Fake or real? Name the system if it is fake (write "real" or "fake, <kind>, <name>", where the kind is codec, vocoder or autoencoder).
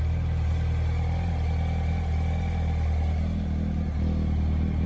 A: real